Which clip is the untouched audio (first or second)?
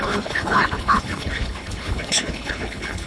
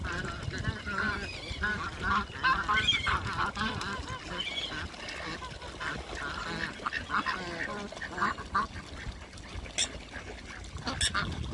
second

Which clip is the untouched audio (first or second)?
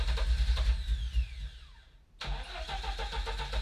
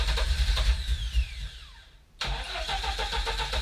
first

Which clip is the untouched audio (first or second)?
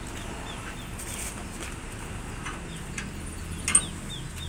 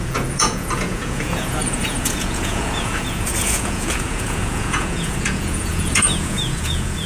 first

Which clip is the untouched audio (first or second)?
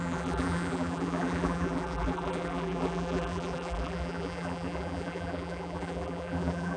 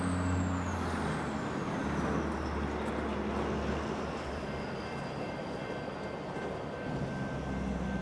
second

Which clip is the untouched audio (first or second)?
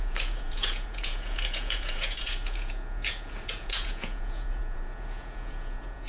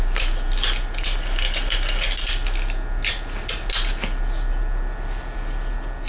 second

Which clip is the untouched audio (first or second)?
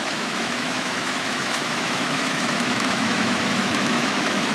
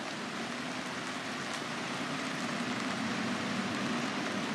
second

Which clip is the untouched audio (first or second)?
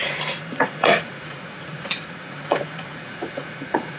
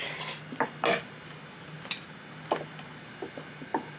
second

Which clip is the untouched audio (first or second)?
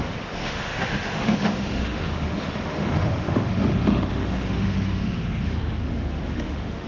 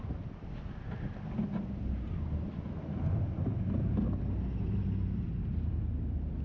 second